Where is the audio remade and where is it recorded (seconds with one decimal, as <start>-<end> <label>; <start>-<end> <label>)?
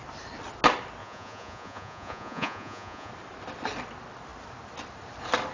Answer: 0.0-1.0 recorded; 1.0-3.1 remade; 3.1-5.5 recorded